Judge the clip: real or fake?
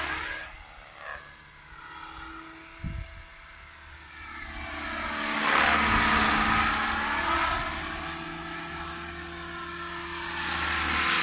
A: real